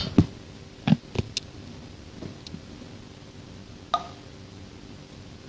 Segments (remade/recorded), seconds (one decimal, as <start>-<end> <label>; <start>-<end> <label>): 0.0-5.5 recorded